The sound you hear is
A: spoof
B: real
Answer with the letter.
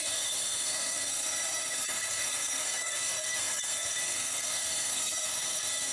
A